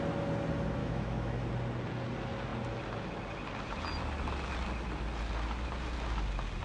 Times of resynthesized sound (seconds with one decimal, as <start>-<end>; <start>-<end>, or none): 0.8-1.5